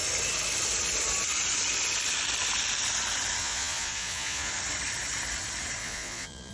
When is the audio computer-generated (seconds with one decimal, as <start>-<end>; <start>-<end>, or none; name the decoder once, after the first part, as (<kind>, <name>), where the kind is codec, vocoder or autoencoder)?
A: 3.4-4.5 (vocoder, Vocos); 5.8-6.5